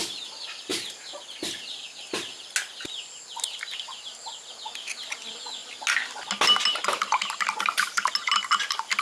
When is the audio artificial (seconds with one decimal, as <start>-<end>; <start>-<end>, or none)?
none